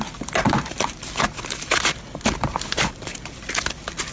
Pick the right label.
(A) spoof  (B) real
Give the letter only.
B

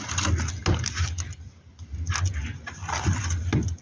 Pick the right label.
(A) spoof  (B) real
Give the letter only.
B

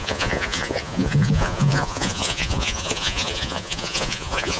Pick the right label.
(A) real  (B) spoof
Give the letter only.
B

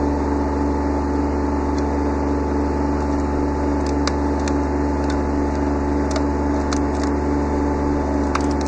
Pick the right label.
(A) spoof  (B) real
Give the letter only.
B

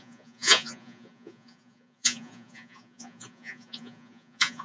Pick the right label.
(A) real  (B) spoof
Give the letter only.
B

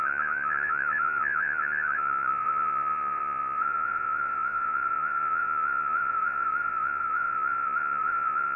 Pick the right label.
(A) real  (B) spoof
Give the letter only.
B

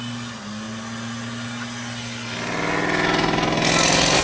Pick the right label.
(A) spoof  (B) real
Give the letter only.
B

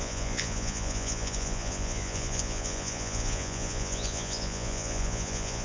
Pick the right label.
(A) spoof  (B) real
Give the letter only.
A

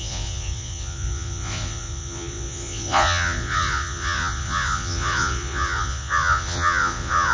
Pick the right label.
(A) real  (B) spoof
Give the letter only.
B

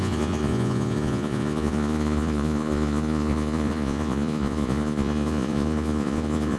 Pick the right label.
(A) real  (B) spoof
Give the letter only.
B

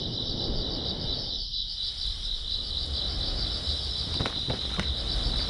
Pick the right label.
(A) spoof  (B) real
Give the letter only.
B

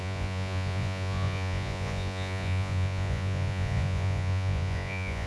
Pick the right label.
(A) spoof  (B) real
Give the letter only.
A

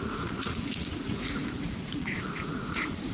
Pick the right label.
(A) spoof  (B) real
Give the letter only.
A